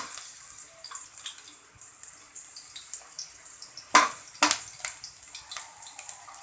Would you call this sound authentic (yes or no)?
yes